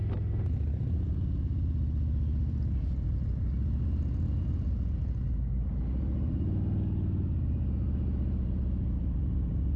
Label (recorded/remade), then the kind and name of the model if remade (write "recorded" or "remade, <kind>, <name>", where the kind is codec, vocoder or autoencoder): recorded